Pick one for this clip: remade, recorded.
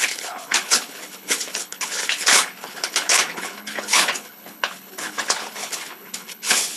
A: remade